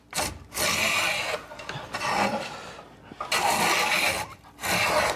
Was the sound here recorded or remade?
recorded